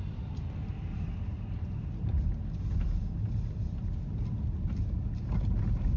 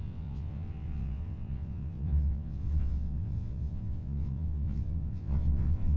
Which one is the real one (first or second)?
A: first